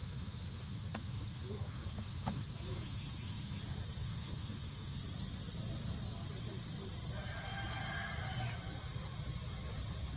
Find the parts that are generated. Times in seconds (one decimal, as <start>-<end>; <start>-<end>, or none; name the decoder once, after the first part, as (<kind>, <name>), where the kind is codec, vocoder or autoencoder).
0.0-3.6 (autoencoder, DAC-VAE); 4.0-5.0